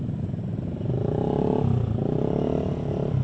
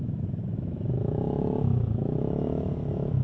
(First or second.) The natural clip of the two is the first